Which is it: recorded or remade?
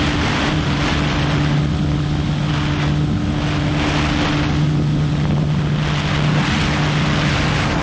recorded